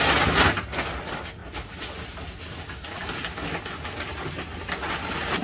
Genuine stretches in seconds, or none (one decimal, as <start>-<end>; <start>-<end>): 0.0-5.4